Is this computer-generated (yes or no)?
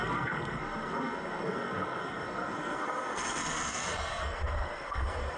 yes